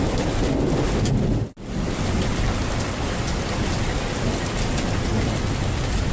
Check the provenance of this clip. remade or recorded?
recorded